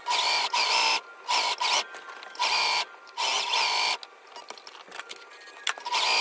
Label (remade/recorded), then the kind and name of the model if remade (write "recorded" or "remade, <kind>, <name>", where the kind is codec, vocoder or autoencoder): recorded